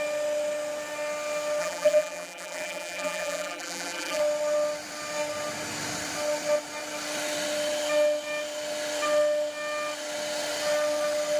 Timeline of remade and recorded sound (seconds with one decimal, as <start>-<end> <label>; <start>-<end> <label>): 0.0-1.6 recorded; 1.6-4.2 remade; 4.2-11.4 recorded